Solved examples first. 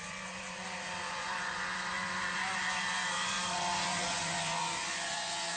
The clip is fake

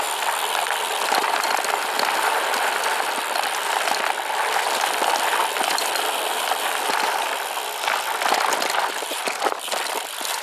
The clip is fake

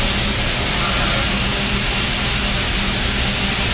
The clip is real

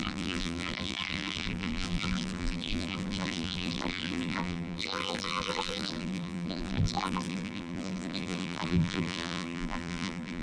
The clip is fake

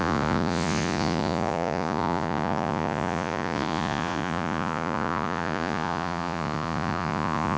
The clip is fake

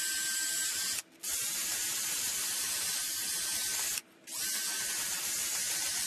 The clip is real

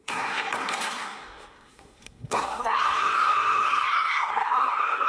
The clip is fake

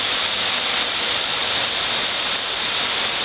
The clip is real